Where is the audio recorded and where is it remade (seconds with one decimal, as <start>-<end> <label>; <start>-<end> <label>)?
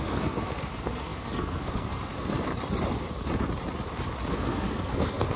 0.0-2.5 remade; 2.5-4.3 recorded; 4.3-5.4 remade